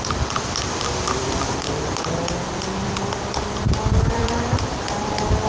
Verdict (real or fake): fake